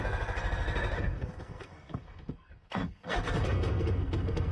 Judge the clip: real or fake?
fake